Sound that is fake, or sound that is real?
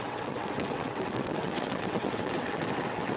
fake